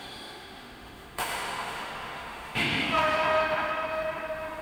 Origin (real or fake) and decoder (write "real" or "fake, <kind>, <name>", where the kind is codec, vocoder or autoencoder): fake, autoencoder, DAC-VAE